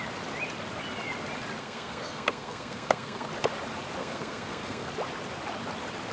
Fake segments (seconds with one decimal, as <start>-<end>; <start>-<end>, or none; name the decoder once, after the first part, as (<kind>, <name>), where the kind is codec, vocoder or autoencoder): 1.6-3.3 (codec, SNAC); 4.0-4.9